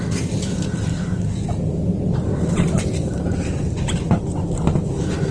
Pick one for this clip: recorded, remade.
recorded